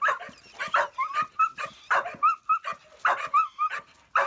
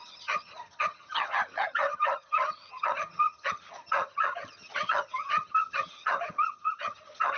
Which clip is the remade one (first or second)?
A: second